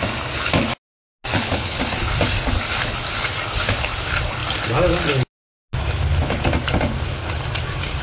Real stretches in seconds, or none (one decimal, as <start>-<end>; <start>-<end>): 0.0-1.3; 1.8-8.0